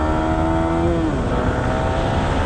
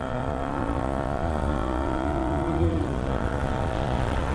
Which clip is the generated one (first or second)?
second